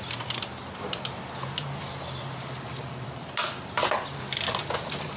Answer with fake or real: fake